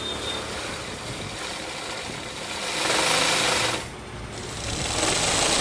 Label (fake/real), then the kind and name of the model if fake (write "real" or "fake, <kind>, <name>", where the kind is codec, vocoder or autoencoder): real